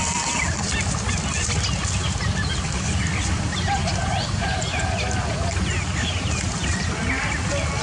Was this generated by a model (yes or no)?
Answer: no